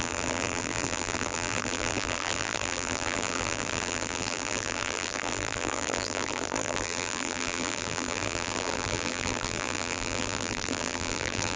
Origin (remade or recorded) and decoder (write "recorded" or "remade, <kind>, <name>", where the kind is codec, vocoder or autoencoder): remade, vocoder, BigVGAN v2